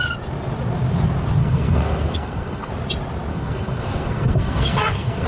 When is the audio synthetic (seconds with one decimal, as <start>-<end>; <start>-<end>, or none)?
1.4-2.7; 3.3-5.3